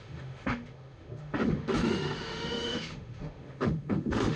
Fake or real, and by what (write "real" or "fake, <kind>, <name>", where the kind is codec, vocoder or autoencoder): fake, autoencoder, DAC-VAE